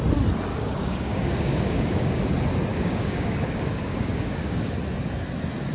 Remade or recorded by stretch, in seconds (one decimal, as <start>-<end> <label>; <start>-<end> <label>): 0.0-0.5 recorded; 0.5-2.2 remade; 2.2-2.7 recorded; 2.7-4.7 remade; 4.7-5.7 recorded

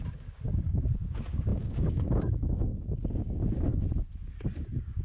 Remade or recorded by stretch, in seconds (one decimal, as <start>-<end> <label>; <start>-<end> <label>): 0.0-3.7 remade; 3.7-4.5 recorded; 4.5-5.0 remade

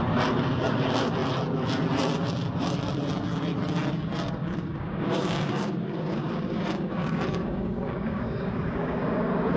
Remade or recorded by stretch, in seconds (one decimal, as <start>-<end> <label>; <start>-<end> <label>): 0.0-4.4 recorded; 4.4-9.6 remade

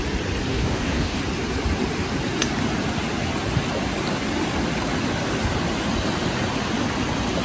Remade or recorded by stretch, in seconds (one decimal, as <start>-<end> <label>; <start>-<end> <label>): 0.0-0.5 recorded; 0.5-1.2 remade; 1.2-7.4 recorded

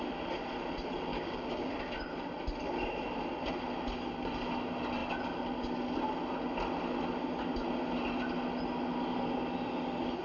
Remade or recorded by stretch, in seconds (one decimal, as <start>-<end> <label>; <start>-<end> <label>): 0.0-1.1 recorded; 1.1-1.7 remade; 1.7-10.2 recorded

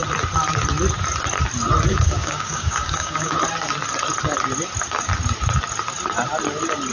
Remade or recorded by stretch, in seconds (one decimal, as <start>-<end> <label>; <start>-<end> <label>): 0.0-1.9 recorded; 1.9-3.3 remade; 3.3-6.9 recorded

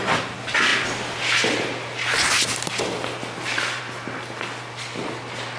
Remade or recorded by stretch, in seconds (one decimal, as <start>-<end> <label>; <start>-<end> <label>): 0.0-5.6 recorded